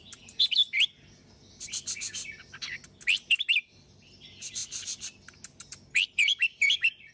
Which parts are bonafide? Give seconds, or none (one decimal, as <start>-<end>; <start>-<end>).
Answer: 0.6-3.5; 4.6-5.7